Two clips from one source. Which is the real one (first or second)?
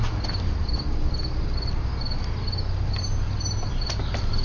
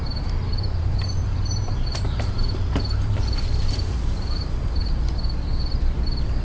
first